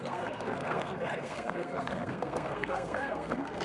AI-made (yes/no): yes